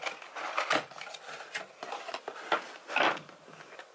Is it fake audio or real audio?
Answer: real